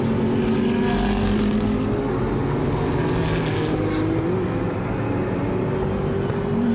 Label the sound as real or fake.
real